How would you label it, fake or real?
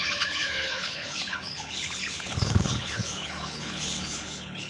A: fake